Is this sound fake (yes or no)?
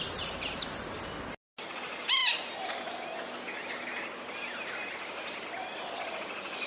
no